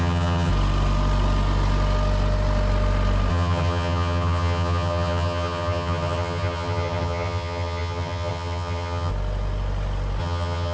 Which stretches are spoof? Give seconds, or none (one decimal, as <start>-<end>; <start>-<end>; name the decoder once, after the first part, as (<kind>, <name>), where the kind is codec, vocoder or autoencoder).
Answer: 0.0-0.5 (vocoder, HiFi-GAN); 3.3-9.1; 10.2-10.7